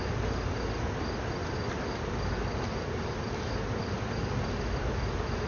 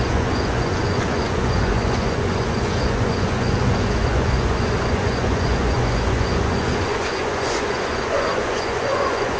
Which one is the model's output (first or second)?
second